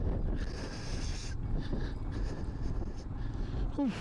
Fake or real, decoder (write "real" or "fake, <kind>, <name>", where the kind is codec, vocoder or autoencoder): real